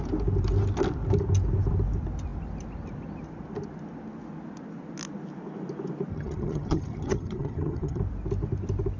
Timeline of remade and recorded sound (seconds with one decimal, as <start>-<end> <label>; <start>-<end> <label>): 0.0-6.1 recorded; 6.1-8.0 remade; 8.0-9.0 recorded